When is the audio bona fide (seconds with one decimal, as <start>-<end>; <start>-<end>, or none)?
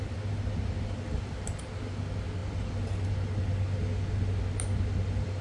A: 0.0-5.4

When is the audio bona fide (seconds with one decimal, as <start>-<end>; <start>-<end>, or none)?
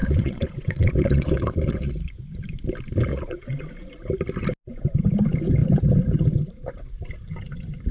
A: 1.9-3.1; 3.7-7.9